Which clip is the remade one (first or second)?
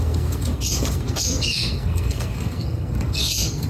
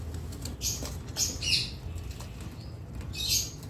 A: first